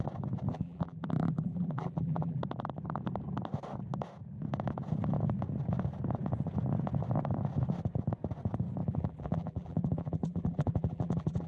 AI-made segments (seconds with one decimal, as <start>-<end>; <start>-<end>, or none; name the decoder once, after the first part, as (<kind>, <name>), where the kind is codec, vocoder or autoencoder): 0.5-2.4 (vocoder, BigVGAN v2); 8.8-11.5